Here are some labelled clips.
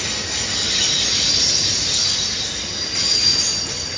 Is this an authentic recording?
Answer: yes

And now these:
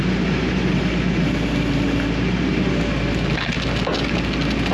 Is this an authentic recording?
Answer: yes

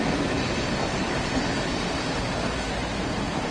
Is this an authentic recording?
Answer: yes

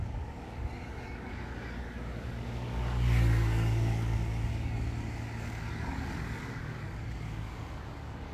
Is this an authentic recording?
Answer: no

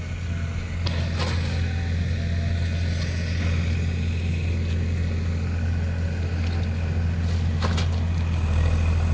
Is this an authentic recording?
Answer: yes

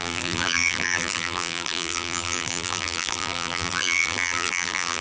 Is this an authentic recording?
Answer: no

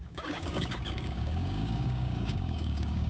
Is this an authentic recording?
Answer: no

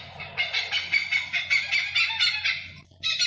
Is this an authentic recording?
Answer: yes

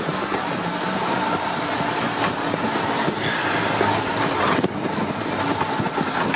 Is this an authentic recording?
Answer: yes